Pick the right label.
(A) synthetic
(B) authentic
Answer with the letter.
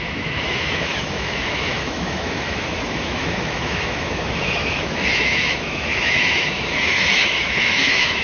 A